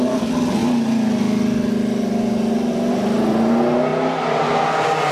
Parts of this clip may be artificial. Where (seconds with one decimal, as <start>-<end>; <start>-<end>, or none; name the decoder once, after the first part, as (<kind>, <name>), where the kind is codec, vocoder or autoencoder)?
none